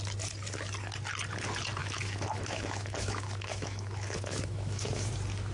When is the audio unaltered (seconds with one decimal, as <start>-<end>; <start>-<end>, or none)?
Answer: 0.0-1.8; 5.1-5.5